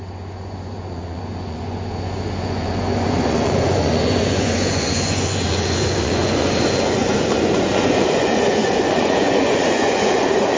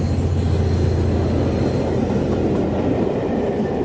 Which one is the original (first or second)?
second